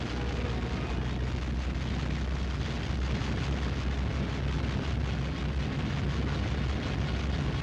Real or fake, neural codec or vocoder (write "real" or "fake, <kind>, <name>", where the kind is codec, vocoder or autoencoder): real